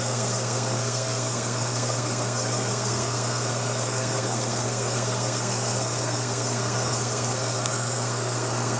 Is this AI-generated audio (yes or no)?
yes